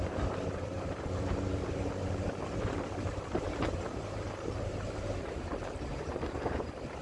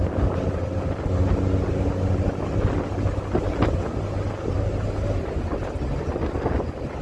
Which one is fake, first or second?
first